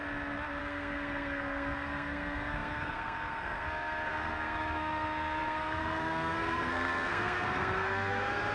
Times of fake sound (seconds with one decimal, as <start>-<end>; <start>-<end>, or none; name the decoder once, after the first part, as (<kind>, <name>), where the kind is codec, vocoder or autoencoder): 0.6-8.5 (codec, SNAC)